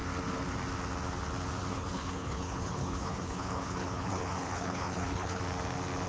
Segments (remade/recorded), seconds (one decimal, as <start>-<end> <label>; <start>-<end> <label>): 0.0-1.7 recorded; 1.7-5.4 remade; 5.4-6.1 recorded